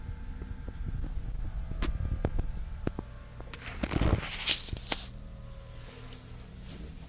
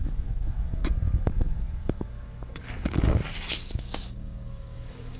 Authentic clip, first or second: first